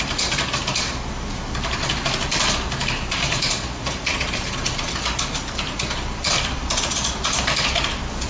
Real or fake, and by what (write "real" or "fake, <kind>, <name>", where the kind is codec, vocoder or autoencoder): fake, vocoder, BigVGAN v2